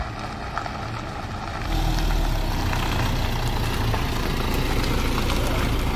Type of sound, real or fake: real